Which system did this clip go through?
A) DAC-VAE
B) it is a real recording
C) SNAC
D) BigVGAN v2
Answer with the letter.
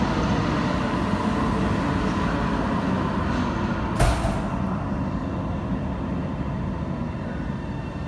B